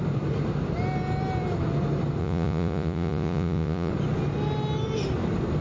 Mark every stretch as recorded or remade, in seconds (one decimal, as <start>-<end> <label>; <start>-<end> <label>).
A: 0.0-2.2 recorded; 2.2-3.9 remade; 3.9-5.6 recorded